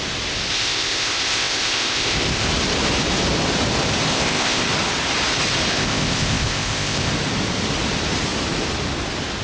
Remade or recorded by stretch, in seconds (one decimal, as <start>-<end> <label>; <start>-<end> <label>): 0.0-0.5 recorded; 0.5-2.5 remade; 2.5-4.1 recorded; 4.1-4.6 remade; 4.6-5.7 recorded; 5.7-7.1 remade; 7.1-9.4 recorded